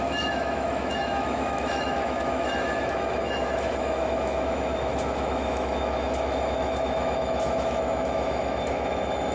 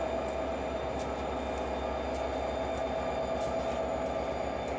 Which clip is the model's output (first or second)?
first